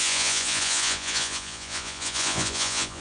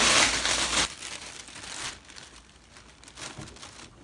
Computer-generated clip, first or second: first